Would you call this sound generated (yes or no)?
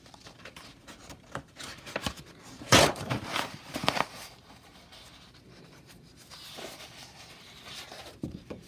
yes